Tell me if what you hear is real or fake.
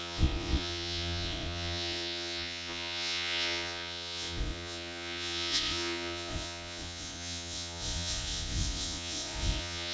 fake